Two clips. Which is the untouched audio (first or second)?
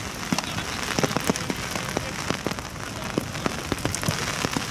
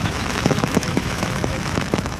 first